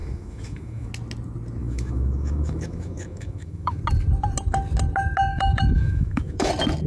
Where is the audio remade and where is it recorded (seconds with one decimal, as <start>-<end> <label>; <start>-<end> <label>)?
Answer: 0.0-0.9 remade; 0.9-1.6 recorded; 1.6-3.8 remade; 3.8-5.3 recorded; 5.3-6.5 remade; 6.5-6.9 recorded